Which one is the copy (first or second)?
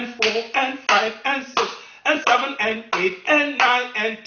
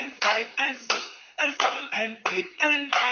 second